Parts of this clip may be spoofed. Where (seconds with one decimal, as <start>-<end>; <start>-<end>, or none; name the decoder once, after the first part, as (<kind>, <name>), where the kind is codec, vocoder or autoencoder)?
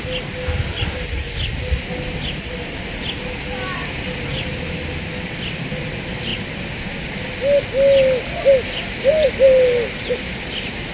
none